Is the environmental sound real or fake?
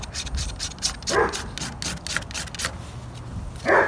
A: real